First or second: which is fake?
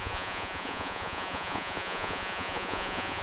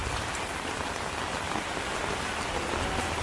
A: first